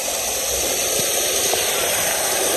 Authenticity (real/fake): real